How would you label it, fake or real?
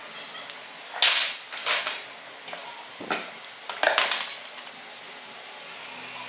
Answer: real